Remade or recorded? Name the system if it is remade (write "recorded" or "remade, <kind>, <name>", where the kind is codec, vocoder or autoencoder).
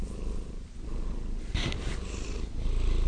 recorded